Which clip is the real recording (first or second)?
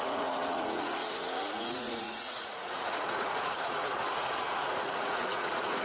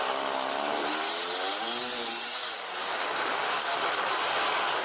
second